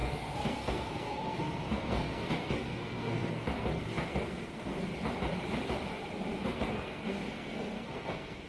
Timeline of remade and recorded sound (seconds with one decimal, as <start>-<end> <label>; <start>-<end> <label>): 0.0-4.9 remade; 4.9-6.4 recorded; 6.4-8.5 remade